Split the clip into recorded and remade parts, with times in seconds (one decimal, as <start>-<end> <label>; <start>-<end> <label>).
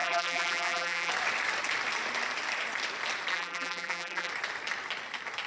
0.0-1.1 remade; 1.1-3.3 recorded; 3.3-4.3 remade; 4.3-5.5 recorded